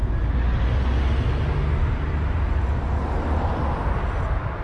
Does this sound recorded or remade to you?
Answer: recorded